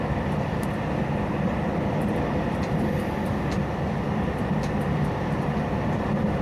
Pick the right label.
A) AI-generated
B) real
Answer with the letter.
B